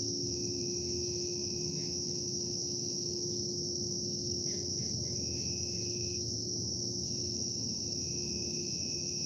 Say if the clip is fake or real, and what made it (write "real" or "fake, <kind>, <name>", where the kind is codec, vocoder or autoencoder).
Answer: fake, autoencoder, DAC-VAE